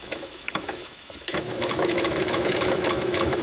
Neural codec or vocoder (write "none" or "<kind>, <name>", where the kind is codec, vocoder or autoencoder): autoencoder, DAC-VAE